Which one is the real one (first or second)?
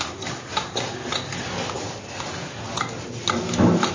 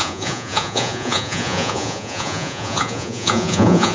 first